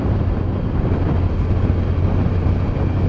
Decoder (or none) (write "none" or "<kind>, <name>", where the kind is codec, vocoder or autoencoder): none